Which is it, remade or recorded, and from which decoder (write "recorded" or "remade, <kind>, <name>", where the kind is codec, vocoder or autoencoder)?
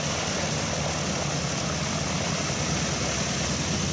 recorded